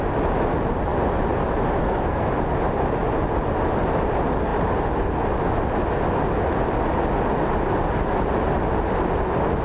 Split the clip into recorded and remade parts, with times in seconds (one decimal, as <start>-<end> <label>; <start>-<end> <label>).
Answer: 0.0-1.8 recorded; 1.8-2.3 remade; 2.3-9.6 recorded